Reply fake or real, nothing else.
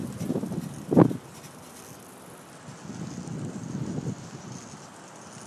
real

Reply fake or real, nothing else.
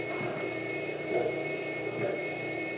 fake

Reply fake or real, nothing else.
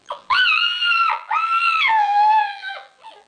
fake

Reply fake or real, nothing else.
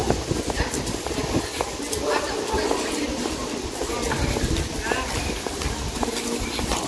real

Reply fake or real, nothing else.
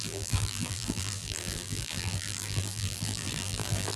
fake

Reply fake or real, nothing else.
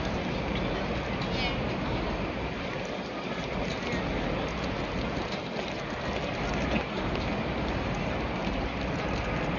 real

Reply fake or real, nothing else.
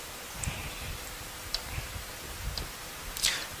fake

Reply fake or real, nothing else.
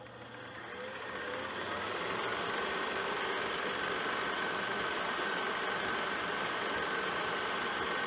real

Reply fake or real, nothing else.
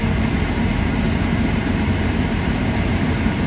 fake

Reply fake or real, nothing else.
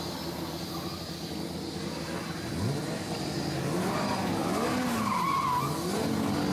real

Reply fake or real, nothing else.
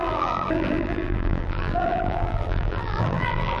fake